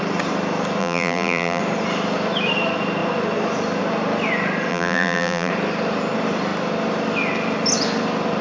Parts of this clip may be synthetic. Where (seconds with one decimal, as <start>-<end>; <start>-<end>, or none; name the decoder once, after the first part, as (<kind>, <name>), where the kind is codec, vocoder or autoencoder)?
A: 0.8-1.6 (vocoder, BigVGAN v2); 4.7-5.5